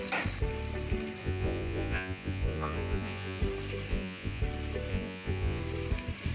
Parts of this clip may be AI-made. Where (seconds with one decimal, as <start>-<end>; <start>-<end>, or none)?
1.2-3.4; 3.9-4.4; 4.9-5.6